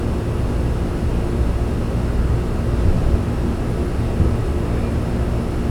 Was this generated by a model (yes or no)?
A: no